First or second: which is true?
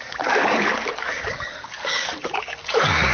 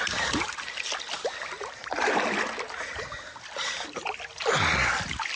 second